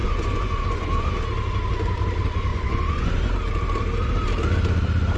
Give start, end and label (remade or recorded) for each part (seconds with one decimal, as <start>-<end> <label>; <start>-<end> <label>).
0.0-1.1 remade; 1.1-2.5 recorded; 2.5-3.3 remade; 3.3-5.2 recorded